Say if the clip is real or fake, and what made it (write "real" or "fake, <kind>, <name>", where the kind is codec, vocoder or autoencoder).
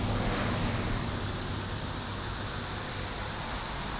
real